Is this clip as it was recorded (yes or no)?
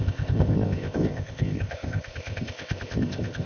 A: no